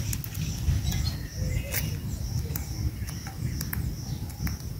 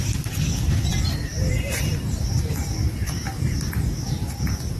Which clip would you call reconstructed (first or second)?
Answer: second